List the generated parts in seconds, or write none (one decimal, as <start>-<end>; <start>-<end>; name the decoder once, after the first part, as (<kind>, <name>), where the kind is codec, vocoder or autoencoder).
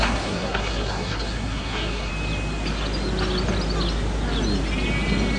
0.0-2.1 (codec, SNAC)